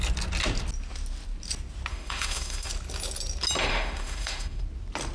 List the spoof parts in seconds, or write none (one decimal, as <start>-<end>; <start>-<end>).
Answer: 1.9-2.7; 3.7-4.6